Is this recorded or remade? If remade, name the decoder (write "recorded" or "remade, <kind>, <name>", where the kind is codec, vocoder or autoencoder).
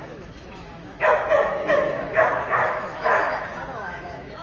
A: remade, autoencoder, DAC-VAE